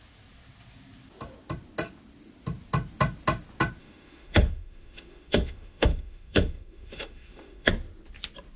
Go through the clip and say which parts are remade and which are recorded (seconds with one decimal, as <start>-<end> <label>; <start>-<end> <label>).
0.0-3.8 recorded; 3.8-7.7 remade; 7.7-8.6 recorded